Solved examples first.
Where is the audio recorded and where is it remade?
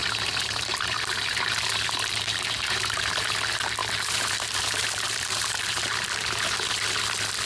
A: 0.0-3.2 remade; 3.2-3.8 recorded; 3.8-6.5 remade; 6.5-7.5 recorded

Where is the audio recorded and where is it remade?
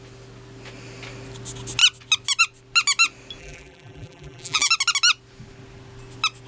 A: 0.0-3.4 recorded; 3.4-4.7 remade; 4.7-6.5 recorded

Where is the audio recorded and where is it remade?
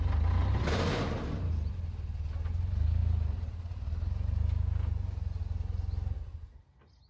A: 0.0-0.4 recorded; 0.4-1.5 remade; 1.5-7.1 recorded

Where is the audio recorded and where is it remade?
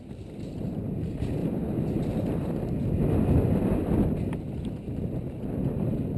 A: 0.0-1.4 remade; 1.4-4.5 recorded; 4.5-6.2 remade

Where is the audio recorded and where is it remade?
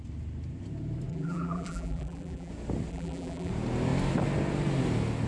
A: 0.0-1.1 recorded; 1.1-2.5 remade; 2.5-2.9 recorded; 2.9-3.5 remade; 3.5-5.3 recorded